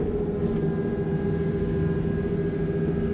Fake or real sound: real